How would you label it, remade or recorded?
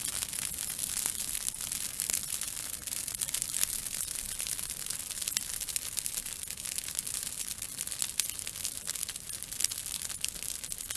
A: recorded